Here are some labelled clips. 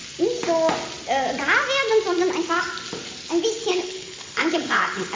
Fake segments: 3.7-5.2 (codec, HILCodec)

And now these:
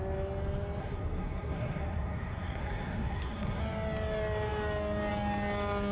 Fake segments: 0.8-3.6 (codec, SNAC)

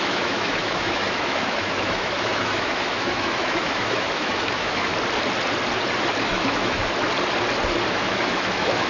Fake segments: 0.0-4.9 (autoencoder, DAC-VAE); 6.3-6.8; 7.9-8.9

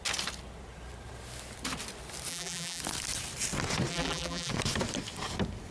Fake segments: 2.3-2.8 (vocoder, BigVGAN v2); 3.9-4.5